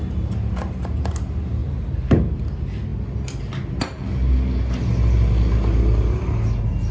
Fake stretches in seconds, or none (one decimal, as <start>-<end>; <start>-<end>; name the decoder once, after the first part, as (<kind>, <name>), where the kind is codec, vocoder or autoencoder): none